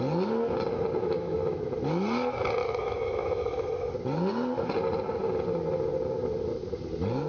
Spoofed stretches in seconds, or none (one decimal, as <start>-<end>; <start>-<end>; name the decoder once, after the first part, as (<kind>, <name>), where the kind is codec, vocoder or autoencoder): 1.0-1.7 (autoencoder, DAC-VAE); 2.6-3.9

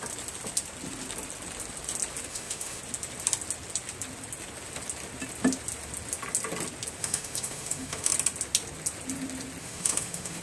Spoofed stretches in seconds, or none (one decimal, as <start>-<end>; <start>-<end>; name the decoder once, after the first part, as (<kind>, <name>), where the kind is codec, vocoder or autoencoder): 2.3-2.8 (autoencoder, DAC-VAE); 7.0-8.1; 9.6-10.4